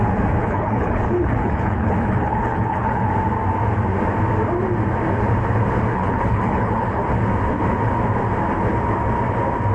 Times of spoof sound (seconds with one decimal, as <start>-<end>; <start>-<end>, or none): 0.4-3.1; 5.9-7.0